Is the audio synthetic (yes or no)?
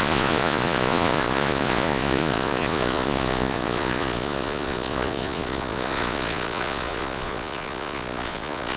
yes